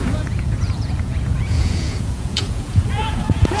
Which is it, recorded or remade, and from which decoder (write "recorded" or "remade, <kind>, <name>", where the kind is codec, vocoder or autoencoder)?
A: remade, vocoder, Vocos